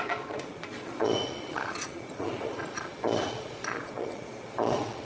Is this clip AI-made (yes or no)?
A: yes